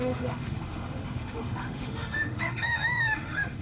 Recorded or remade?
remade